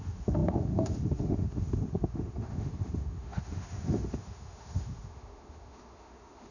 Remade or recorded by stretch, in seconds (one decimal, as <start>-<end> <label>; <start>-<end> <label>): 0.0-6.5 remade